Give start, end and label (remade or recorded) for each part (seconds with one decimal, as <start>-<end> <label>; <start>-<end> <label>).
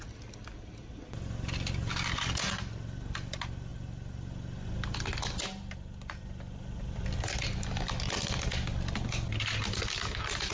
0.0-10.5 recorded